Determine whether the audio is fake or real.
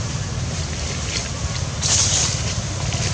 real